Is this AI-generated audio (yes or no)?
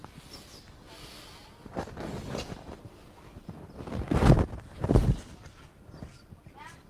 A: no